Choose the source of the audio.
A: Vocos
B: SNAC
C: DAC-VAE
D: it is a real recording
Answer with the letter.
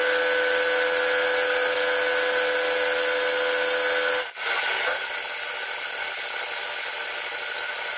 D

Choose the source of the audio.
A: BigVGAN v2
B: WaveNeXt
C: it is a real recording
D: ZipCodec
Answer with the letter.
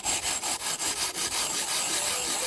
C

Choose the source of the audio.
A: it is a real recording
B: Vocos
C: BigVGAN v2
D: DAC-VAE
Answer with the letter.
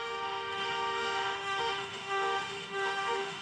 D